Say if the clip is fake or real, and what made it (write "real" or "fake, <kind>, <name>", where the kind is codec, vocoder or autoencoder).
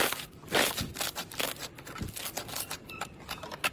real